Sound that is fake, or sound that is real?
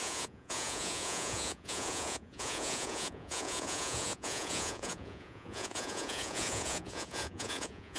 fake